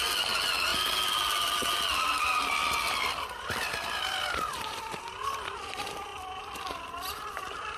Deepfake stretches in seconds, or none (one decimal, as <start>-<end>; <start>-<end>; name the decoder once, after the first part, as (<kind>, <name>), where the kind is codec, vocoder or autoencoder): none